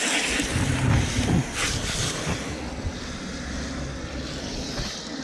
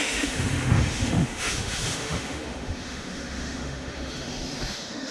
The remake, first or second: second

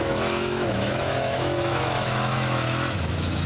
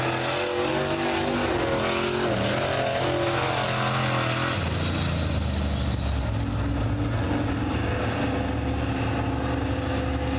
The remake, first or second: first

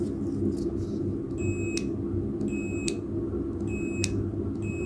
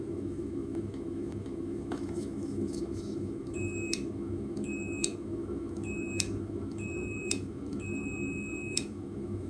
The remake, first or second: second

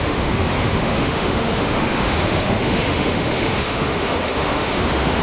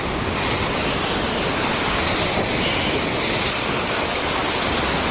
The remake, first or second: first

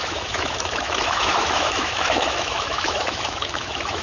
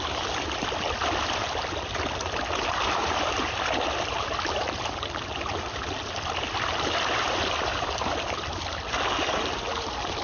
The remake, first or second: first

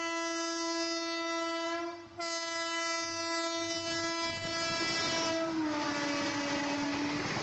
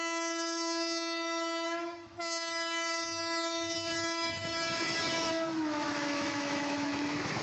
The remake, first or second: second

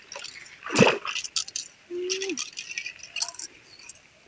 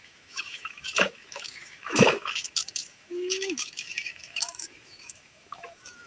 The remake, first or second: second